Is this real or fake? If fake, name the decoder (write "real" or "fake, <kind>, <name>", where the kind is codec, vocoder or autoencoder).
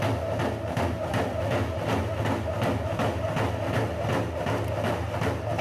real